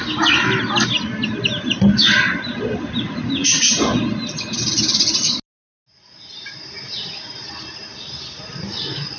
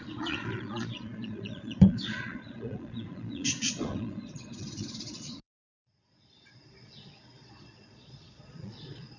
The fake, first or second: second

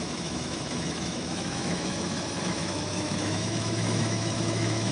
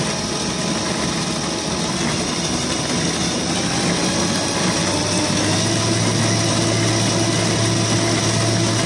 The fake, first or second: first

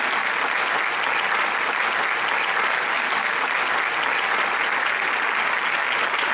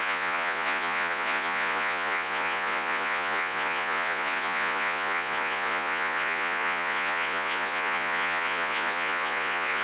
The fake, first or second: second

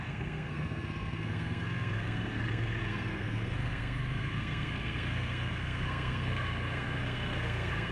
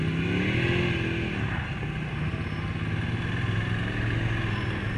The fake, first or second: first